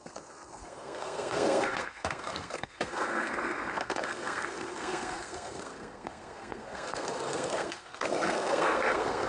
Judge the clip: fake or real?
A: fake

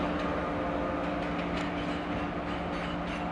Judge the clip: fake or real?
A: real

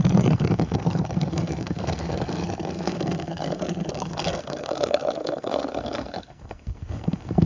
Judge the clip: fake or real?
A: fake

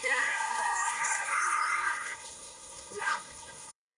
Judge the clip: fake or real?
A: fake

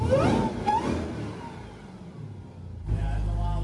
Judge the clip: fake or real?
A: real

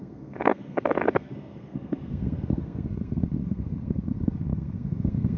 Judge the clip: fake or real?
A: fake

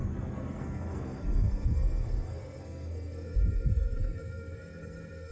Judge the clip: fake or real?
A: fake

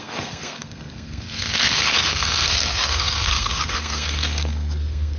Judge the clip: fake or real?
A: fake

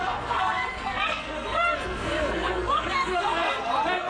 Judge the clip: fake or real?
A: fake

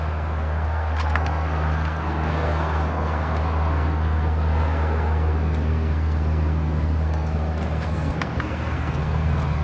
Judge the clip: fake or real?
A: fake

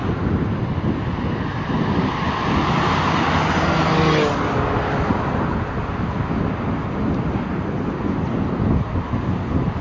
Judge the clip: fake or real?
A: real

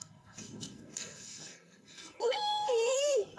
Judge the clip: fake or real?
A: fake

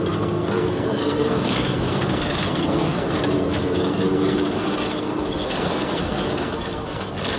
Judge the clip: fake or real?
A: fake